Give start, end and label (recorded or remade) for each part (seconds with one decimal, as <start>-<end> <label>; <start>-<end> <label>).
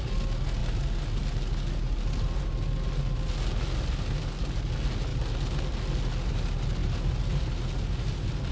0.0-8.5 recorded